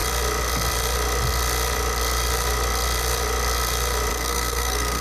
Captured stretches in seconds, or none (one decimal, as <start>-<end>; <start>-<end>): 0.0-4.1